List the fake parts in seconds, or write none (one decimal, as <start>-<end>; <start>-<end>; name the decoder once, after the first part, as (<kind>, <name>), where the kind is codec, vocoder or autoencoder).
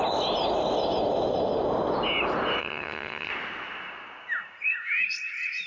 2.6-3.3 (vocoder, HiFi-GAN)